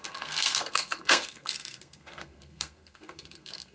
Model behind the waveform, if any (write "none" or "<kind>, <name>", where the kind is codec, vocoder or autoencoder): codec, SNAC